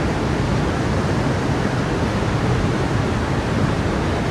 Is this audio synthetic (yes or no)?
no